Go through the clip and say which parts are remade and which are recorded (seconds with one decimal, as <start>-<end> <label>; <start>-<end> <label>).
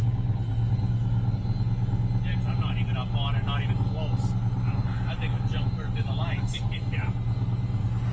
0.0-8.1 recorded